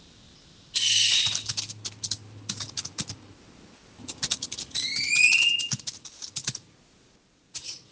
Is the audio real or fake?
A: real